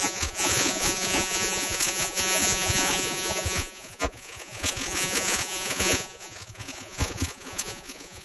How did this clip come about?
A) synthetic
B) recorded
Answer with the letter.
A